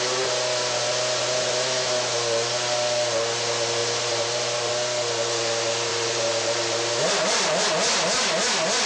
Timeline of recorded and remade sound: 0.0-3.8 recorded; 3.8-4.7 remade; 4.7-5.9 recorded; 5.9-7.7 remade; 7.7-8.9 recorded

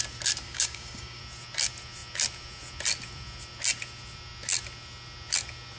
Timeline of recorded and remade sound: 0.0-0.4 recorded; 0.4-1.2 remade; 1.2-5.8 recorded

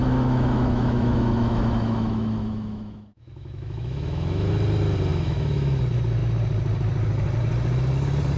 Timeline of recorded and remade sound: 0.0-4.5 remade; 4.5-5.1 recorded; 5.1-5.8 remade; 5.8-8.4 recorded